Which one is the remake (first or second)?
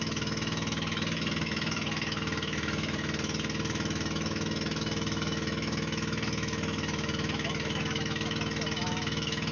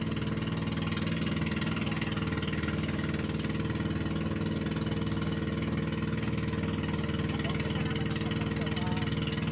first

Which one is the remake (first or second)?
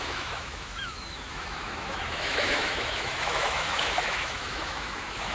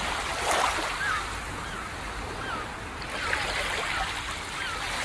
first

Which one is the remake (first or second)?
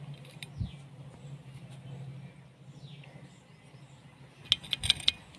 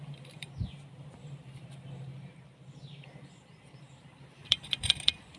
second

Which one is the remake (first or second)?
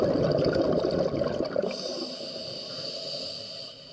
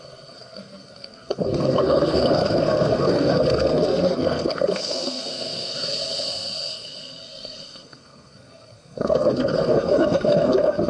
second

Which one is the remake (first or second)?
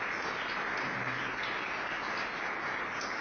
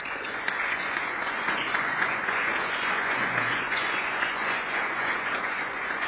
second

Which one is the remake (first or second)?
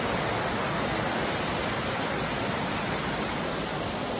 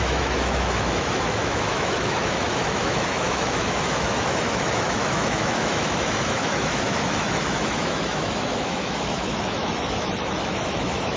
second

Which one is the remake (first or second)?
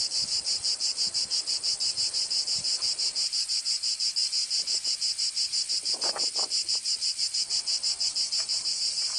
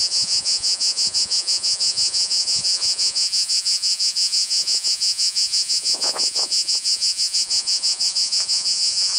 second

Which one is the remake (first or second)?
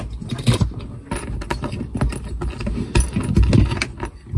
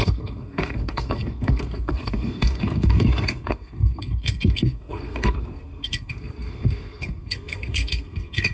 second